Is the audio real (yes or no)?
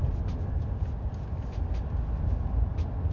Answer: yes